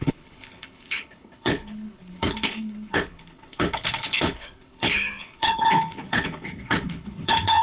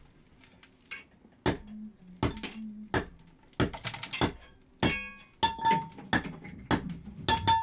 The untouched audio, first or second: second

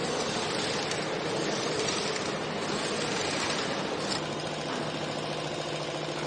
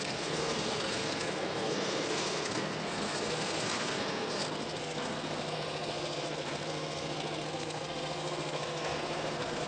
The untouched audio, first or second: first